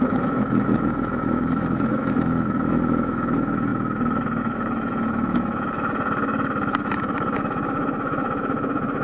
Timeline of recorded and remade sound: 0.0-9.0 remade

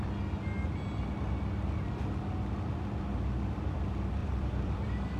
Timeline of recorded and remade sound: 0.0-4.2 recorded; 4.2-5.2 remade

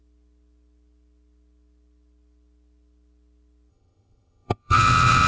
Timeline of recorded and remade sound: 0.0-3.7 recorded; 3.7-5.3 remade

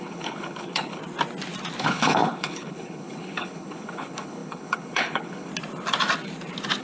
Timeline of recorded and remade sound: 0.0-1.0 remade; 1.0-1.8 recorded; 1.8-5.5 remade; 5.5-6.8 recorded